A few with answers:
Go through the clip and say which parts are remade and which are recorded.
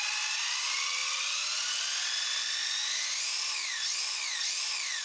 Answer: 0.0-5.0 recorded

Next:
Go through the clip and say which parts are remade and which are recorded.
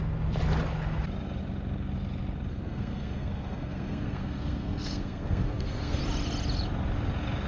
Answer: 0.0-2.5 recorded; 2.5-6.0 remade; 6.0-7.5 recorded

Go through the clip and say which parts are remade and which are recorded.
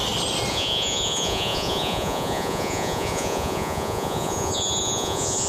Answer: 0.0-0.5 recorded; 0.5-5.5 remade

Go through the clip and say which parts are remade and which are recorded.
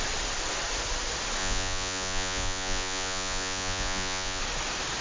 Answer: 0.0-1.4 recorded; 1.4-4.4 remade; 4.4-5.0 recorded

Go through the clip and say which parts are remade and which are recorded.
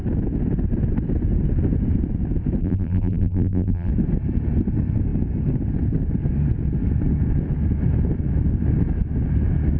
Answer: 0.0-2.6 recorded; 2.6-3.9 remade; 3.9-9.8 recorded